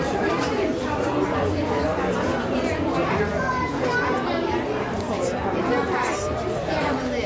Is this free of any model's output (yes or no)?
yes